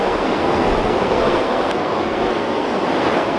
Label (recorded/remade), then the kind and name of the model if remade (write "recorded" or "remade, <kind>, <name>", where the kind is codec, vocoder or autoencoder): remade, codec, SNAC